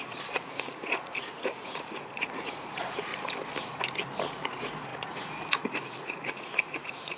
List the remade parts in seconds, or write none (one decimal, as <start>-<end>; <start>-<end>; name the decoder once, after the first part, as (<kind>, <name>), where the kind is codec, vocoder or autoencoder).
0.0-3.1 (vocoder, Vocos); 4.3-7.2